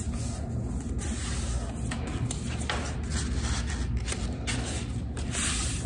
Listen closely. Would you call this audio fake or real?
real